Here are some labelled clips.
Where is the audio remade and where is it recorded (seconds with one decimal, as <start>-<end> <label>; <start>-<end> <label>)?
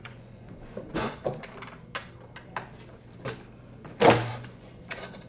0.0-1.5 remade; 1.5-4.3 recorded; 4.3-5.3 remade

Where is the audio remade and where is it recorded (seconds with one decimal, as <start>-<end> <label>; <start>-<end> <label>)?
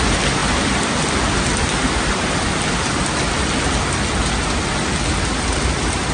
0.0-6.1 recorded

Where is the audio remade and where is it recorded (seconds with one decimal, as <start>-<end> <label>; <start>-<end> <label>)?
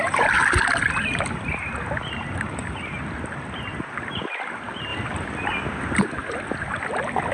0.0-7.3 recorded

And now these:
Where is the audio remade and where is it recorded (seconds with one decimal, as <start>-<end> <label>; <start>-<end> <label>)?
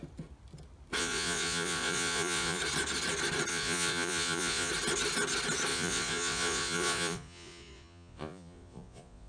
0.0-1.0 recorded; 1.0-2.6 remade; 2.6-3.5 recorded; 3.5-4.7 remade; 4.7-5.7 recorded; 5.7-9.3 remade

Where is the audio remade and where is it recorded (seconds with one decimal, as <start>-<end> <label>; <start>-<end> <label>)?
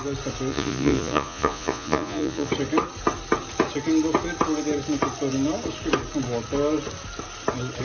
0.0-0.5 recorded; 0.5-2.5 remade; 2.5-7.8 recorded